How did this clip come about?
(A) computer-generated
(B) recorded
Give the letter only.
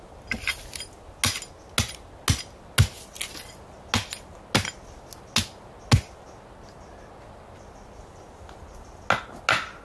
B